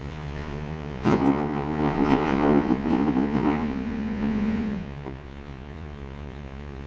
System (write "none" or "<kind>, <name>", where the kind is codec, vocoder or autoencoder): vocoder, Vocos